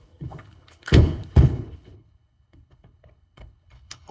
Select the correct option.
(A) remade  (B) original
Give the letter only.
A